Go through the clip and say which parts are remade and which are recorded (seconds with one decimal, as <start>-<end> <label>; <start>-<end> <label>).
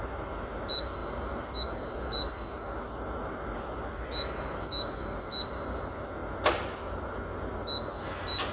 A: 0.0-8.5 recorded